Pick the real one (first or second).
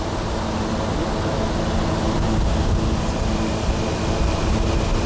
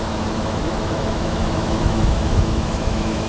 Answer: first